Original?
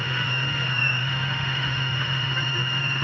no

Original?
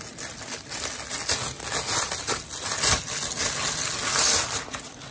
yes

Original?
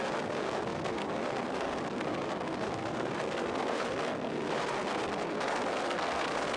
no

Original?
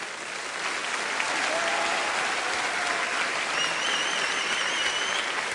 yes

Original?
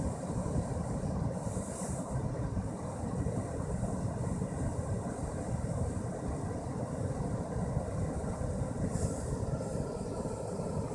yes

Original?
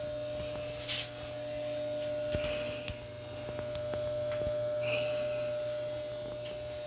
yes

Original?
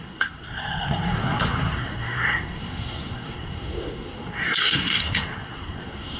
no